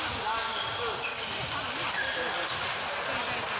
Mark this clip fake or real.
real